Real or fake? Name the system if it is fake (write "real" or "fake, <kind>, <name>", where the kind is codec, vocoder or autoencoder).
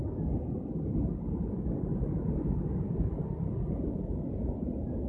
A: real